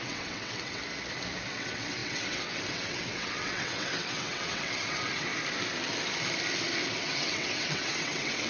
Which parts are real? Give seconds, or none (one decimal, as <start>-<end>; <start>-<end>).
0.8-1.5; 5.3-7.0